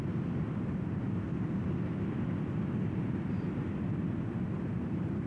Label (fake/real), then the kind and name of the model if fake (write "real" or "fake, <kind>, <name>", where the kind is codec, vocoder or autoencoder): real